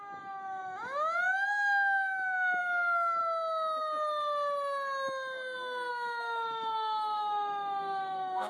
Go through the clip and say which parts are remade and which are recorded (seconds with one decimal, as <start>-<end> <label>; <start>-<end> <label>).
0.0-3.2 remade; 3.2-5.9 recorded; 5.9-8.5 remade